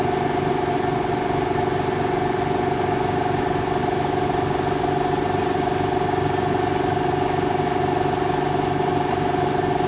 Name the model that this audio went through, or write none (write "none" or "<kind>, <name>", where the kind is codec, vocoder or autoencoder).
none